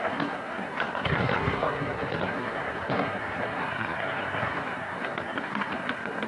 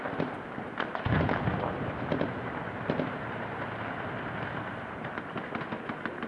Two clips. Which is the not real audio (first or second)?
first